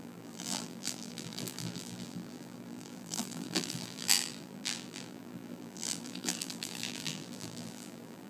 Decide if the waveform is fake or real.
fake